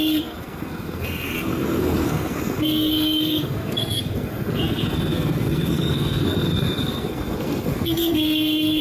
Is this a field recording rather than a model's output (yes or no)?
no